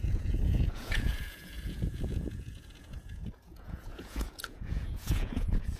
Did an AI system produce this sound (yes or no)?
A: yes